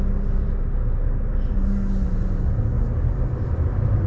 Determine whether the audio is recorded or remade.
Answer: recorded